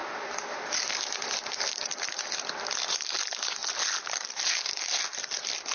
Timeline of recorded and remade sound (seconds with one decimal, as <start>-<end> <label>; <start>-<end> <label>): 0.0-5.7 recorded